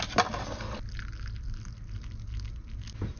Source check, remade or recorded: recorded